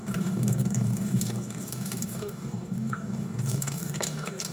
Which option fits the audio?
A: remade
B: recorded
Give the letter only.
A